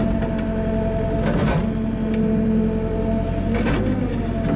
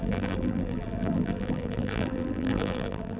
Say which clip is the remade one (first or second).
second